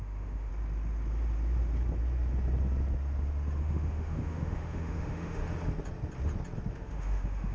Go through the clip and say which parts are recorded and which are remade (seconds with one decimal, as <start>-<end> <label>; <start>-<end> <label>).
0.0-0.5 remade; 0.5-3.6 recorded; 3.6-5.4 remade; 5.4-6.7 recorded; 6.7-7.5 remade